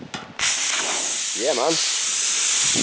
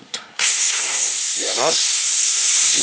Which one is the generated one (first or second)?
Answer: second